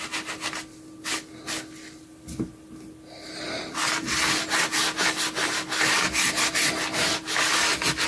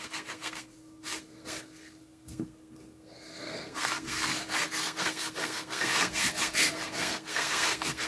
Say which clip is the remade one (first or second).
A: second